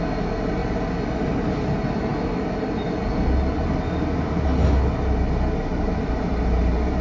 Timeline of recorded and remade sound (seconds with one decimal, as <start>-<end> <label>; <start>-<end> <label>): 0.0-7.0 recorded